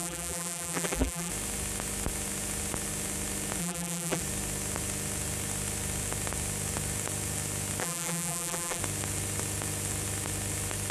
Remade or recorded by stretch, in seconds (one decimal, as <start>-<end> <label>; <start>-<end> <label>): 0.0-1.3 remade; 1.3-3.6 recorded; 3.6-4.2 remade; 4.2-7.8 recorded; 7.8-8.8 remade; 8.8-10.9 recorded